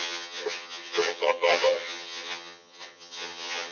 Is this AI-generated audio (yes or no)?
yes